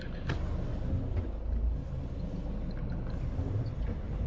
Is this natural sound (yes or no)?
yes